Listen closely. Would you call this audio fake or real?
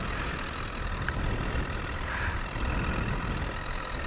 real